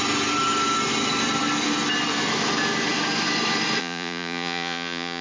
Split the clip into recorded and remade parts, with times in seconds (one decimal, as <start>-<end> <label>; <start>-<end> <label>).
0.0-3.8 recorded; 3.8-5.2 remade